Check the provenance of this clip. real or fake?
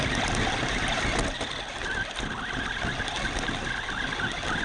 real